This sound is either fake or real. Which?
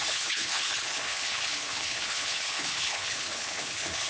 fake